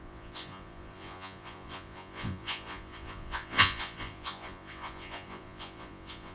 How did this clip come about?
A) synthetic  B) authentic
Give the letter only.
A